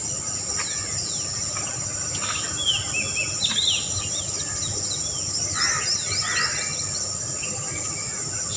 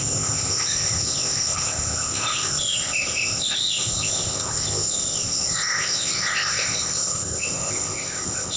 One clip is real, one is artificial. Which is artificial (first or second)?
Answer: second